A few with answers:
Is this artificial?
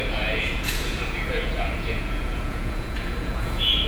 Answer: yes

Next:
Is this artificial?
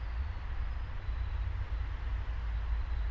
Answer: no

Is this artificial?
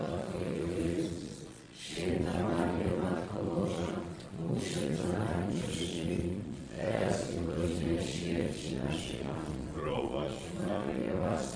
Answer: yes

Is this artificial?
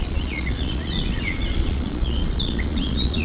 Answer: yes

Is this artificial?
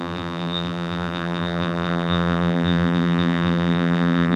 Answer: yes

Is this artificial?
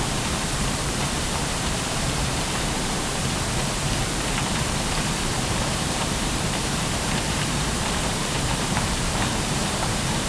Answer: yes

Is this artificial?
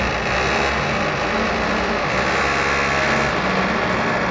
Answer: no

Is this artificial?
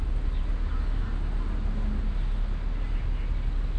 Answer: no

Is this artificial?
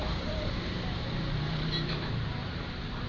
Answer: yes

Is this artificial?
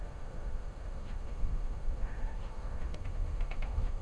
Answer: yes